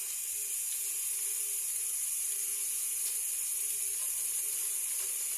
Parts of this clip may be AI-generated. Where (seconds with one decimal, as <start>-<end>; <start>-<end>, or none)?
0.4-1.1; 2.5-3.0